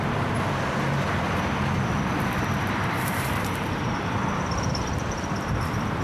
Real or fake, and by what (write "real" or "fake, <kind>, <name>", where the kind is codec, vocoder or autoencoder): fake, vocoder, BigVGAN v2